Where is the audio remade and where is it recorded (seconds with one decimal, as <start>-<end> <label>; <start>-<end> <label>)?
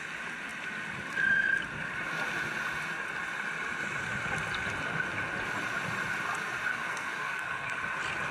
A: 0.0-6.7 recorded; 6.7-7.8 remade; 7.8-8.3 recorded